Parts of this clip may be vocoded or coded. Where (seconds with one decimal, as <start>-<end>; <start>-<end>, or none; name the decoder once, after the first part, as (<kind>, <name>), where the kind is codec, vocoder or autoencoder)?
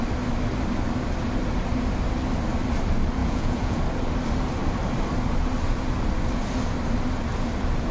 3.2-3.8 (vocoder, Vocos)